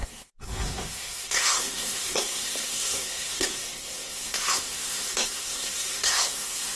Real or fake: fake